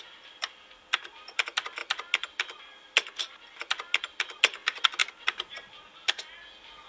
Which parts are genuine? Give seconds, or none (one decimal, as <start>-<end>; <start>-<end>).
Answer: 0.0-5.0; 5.7-6.9